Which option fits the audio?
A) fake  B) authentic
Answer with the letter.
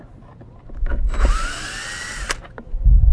B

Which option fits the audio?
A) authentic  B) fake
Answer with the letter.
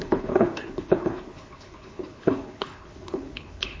B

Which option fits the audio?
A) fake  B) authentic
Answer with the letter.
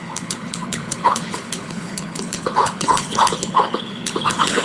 A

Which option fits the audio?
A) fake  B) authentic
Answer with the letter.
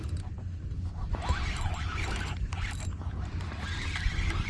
B